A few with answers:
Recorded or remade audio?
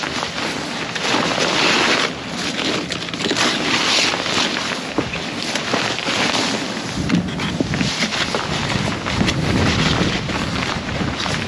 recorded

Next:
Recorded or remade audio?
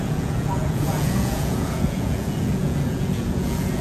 remade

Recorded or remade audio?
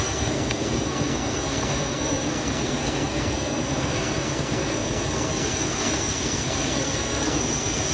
remade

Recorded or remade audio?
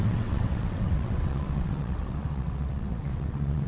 remade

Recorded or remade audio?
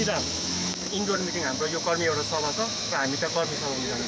remade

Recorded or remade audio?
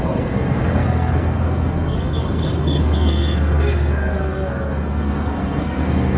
remade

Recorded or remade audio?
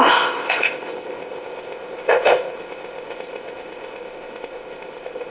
remade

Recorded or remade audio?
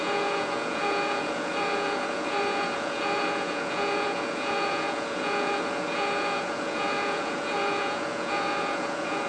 remade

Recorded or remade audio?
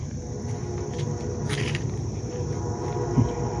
recorded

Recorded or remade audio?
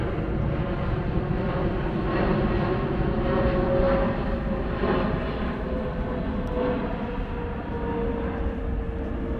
recorded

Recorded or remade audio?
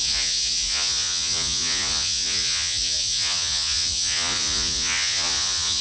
remade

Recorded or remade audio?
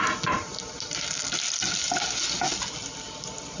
recorded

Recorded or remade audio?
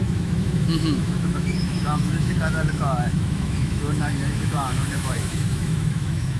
remade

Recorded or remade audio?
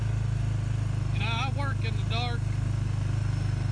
recorded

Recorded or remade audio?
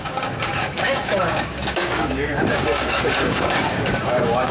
remade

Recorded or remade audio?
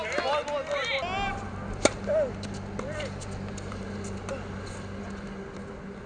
recorded